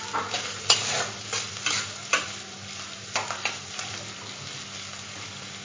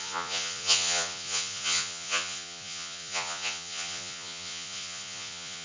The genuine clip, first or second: first